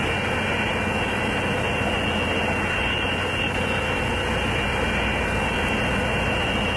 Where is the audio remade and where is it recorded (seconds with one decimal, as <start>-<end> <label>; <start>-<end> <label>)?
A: 0.0-6.8 recorded